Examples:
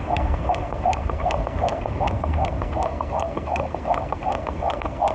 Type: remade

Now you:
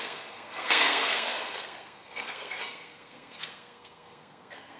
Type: remade